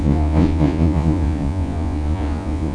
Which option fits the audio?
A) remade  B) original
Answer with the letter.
A